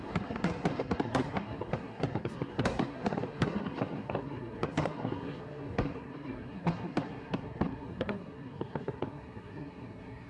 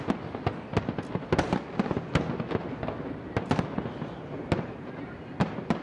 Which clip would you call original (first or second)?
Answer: second